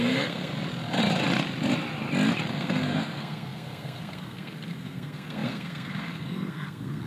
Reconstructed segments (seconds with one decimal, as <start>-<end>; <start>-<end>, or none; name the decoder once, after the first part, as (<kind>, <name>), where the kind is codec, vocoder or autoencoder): 0.0-0.5 (codec, SNAC); 2.5-7.1